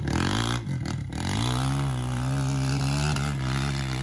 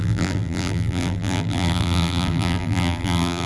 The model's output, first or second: second